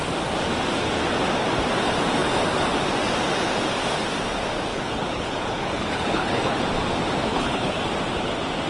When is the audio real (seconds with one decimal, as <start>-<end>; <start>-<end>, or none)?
0.0-4.7; 6.6-7.3; 7.8-8.7